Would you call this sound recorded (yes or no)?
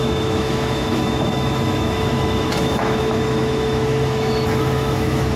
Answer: no